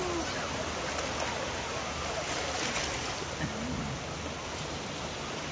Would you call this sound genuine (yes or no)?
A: yes